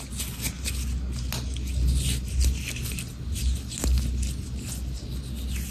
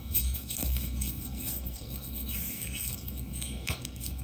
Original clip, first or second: first